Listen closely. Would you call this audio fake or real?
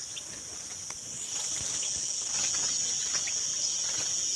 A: real